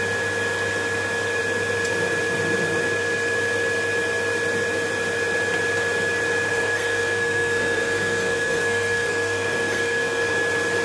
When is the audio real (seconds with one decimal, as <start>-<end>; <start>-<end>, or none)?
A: 0.0-6.5; 10.3-10.8